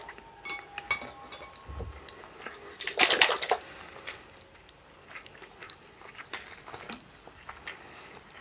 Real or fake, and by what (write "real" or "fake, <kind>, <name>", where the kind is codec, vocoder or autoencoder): real